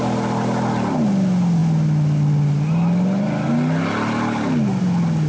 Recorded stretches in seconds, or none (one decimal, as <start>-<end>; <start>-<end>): 0.0-5.3